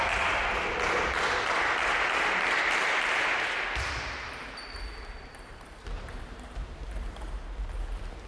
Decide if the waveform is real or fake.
real